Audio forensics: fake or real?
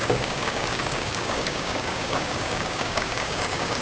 fake